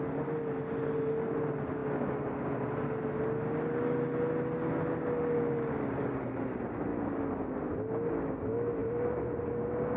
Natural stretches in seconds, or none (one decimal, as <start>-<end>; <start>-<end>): 0.0-8.8; 9.4-10.0